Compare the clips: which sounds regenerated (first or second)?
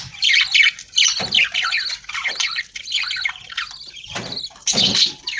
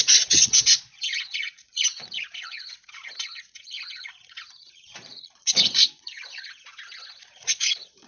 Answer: second